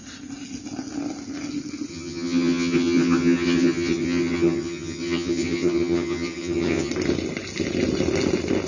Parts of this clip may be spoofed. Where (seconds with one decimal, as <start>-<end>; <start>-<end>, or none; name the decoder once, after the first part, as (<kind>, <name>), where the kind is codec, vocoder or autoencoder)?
1.9-6.9 (vocoder, HiFi-GAN)